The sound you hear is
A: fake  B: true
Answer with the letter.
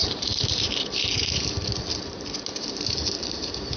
A